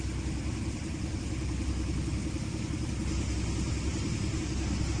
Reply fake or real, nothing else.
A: real